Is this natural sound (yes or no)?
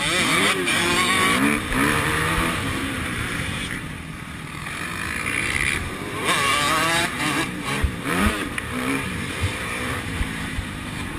no